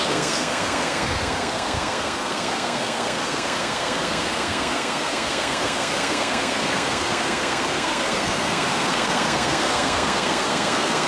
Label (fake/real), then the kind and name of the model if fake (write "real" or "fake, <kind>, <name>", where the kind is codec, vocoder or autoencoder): fake, codec, SNAC